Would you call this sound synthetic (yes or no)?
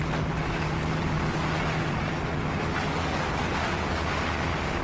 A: no